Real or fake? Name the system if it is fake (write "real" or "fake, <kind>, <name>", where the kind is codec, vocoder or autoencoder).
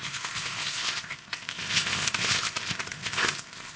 fake, codec, ZipCodec